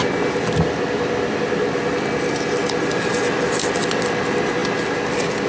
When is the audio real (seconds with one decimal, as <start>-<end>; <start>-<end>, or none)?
0.0-5.5